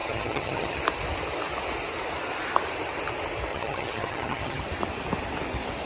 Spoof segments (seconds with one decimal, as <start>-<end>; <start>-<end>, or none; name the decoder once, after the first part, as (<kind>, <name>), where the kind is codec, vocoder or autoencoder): 0.0-0.8 (vocoder, HiFi-GAN); 3.5-4.6